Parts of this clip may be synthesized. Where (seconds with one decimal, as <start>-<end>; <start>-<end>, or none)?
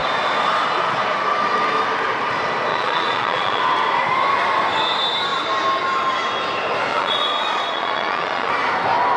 2.7-3.6; 6.9-8.5